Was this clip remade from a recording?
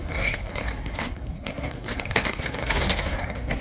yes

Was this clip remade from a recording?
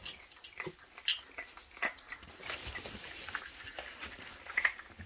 no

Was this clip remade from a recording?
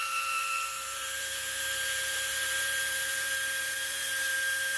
yes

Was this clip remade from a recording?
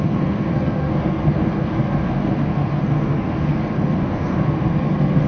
yes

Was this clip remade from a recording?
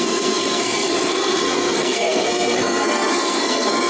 yes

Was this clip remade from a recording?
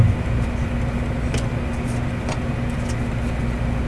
no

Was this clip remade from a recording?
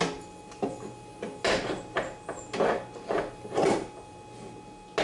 no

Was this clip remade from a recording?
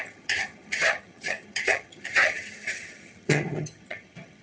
yes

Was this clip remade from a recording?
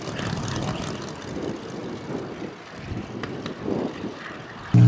no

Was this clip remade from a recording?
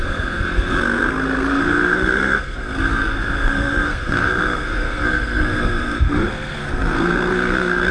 yes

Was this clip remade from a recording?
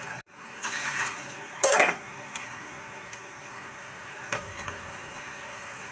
yes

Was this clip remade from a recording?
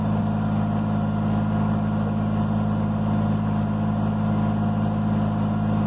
no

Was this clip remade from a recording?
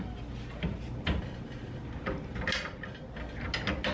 no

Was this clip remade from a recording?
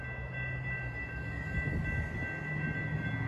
no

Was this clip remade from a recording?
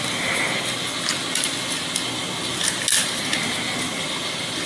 no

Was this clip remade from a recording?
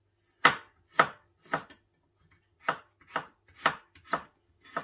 no